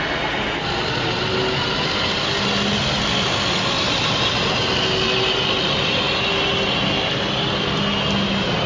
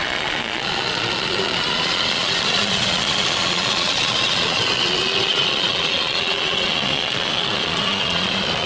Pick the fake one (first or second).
second